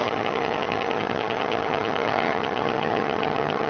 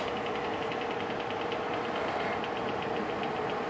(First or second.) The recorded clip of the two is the second